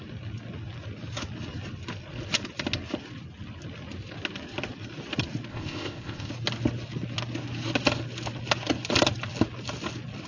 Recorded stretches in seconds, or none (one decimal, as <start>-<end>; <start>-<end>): 0.0-5.5; 6.3-10.3